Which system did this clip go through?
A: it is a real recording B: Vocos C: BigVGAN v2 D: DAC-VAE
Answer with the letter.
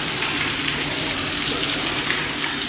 C